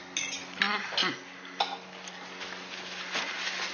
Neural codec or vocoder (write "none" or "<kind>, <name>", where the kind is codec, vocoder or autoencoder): none